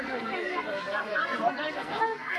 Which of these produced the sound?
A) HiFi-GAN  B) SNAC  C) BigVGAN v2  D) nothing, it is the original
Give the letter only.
B